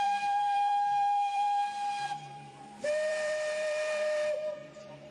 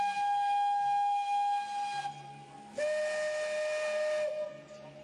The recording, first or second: second